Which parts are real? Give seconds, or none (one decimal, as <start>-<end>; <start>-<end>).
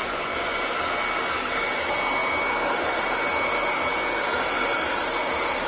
0.6-5.7